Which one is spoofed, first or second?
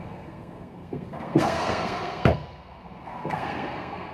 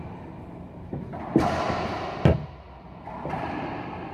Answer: first